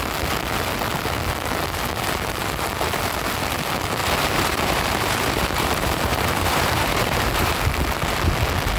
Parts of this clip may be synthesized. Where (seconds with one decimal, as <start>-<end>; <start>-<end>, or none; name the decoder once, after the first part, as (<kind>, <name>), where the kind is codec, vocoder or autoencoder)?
4.0-7.6 (vocoder, BigVGAN v2)